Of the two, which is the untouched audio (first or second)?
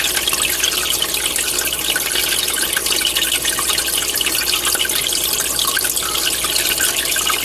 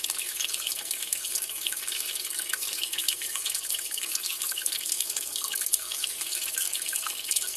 first